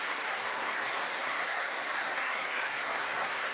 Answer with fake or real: fake